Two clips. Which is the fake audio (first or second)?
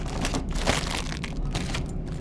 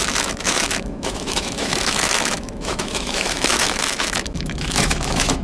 second